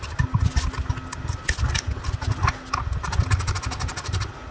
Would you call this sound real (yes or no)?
yes